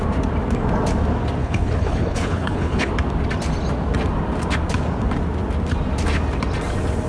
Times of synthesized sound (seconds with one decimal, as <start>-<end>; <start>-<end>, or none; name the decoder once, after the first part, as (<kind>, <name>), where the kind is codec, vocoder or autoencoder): 1.4-2.9 (codec, HILCodec)